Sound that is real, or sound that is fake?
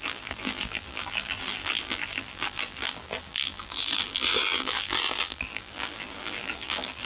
fake